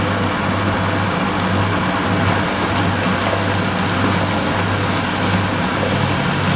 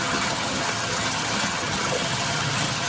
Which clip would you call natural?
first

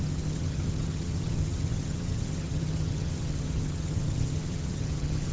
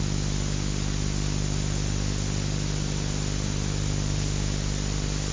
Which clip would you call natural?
second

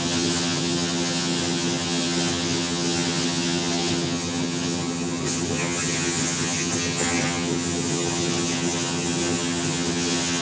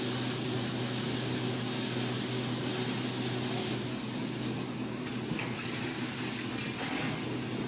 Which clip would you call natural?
second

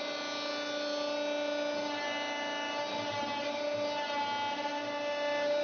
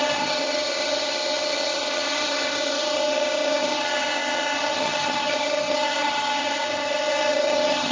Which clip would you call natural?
first